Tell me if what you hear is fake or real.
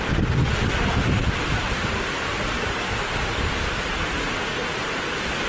real